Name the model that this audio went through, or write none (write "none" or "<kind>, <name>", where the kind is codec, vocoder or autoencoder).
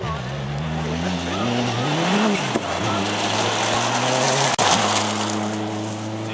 none